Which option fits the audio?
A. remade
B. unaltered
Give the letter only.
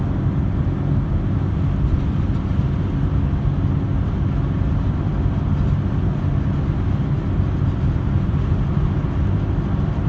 B